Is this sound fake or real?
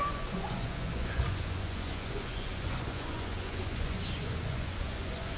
fake